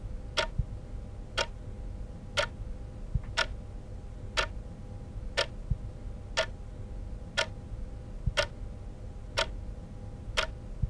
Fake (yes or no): no